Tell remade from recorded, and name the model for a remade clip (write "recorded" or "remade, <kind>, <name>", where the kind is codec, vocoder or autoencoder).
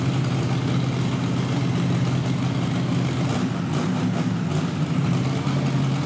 recorded